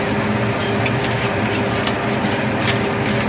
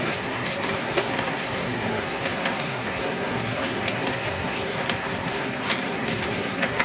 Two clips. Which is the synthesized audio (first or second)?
second